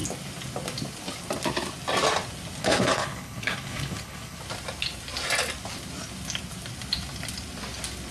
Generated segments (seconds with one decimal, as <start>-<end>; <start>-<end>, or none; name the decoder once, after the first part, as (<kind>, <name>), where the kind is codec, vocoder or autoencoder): 2.6-4.4 (codec, HILCodec)